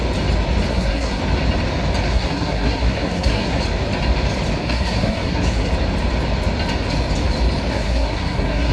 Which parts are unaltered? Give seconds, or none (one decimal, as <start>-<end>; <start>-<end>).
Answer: 0.0-0.7; 1.2-2.1; 3.6-4.6; 5.7-7.7